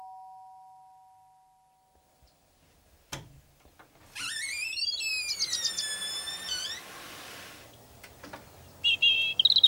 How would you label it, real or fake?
real